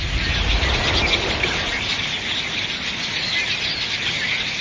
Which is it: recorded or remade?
recorded